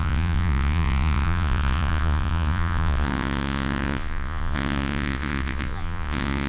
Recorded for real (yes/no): no